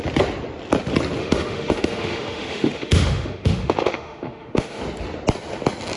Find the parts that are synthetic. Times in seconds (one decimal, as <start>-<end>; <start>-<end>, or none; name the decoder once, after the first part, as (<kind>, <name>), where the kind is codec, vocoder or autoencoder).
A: 1.2-4.8 (autoencoder, DAC-VAE)